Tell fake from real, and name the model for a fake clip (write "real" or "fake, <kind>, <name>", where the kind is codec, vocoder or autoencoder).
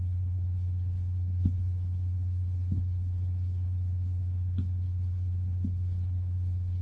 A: fake, codec, HILCodec